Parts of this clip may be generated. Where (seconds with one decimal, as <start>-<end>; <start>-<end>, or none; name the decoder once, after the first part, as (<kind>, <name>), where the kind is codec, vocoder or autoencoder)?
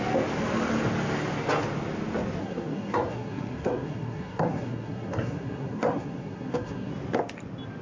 2.4-6.9 (codec, SNAC)